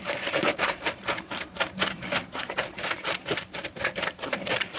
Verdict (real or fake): fake